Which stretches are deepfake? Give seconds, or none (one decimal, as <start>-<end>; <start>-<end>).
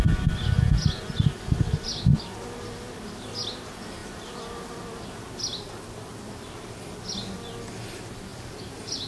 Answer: 8.3-9.1